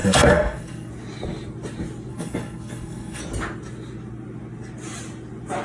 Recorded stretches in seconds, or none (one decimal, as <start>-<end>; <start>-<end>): 0.9-2.1; 3.2-5.6